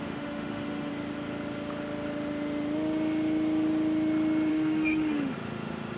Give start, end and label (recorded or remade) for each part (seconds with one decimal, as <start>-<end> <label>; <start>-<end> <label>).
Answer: 0.0-0.9 remade; 0.9-4.5 recorded; 4.5-6.0 remade